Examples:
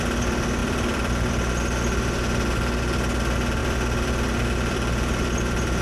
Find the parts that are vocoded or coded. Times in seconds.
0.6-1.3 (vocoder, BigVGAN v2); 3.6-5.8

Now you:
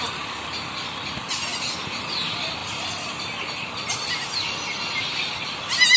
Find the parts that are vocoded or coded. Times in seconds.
none